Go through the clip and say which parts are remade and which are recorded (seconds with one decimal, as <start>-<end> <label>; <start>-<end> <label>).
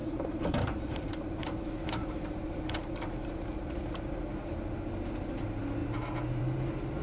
0.0-4.2 remade; 4.2-7.0 recorded